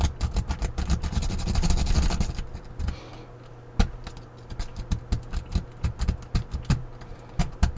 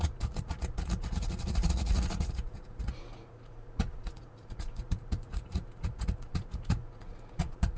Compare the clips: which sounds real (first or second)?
first